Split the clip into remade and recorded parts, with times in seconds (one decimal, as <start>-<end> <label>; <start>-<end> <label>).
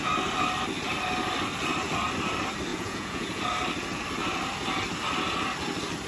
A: 0.0-2.7 recorded; 2.7-3.4 remade; 3.4-6.1 recorded